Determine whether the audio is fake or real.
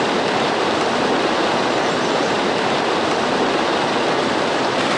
fake